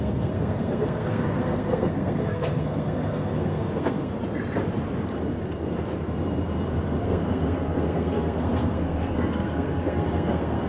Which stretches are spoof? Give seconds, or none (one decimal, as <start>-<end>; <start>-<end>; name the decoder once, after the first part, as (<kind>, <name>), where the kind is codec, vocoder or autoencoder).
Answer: 0.0-4.1 (codec, SNAC); 7.0-10.7